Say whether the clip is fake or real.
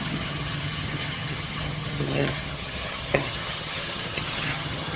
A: fake